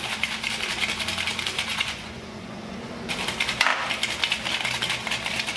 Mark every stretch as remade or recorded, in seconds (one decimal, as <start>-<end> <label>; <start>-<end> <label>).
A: 0.0-1.7 recorded; 1.7-2.9 remade; 2.9-5.6 recorded